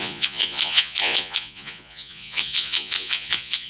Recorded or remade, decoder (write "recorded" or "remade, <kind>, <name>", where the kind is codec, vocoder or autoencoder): remade, vocoder, Vocos